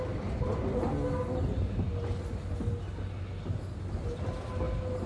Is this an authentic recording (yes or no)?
yes